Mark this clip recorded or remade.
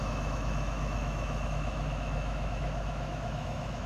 remade